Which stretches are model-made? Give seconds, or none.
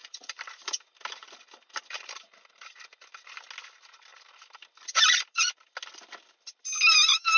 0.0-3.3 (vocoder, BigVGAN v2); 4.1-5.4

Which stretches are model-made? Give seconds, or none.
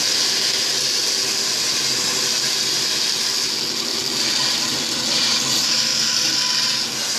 none